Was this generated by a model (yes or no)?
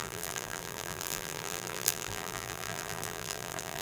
yes